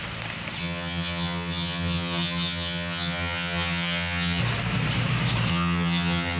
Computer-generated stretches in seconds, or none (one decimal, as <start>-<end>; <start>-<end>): 0.6-4.4; 5.5-6.4